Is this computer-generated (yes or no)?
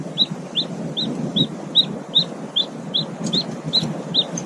no